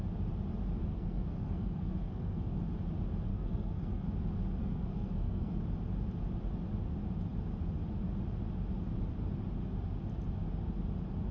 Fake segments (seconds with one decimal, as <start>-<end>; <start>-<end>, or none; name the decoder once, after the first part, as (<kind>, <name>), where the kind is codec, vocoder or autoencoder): 0.9-2.6 (codec, SNAC); 3.3-4.1; 4.6-5.6